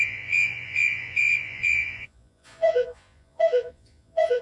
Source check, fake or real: fake